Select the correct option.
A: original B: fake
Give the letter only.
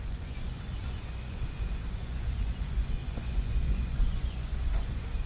B